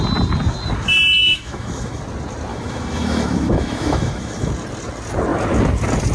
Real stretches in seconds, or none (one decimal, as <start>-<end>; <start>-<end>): 0.0-1.2; 2.0-2.5; 4.5-6.1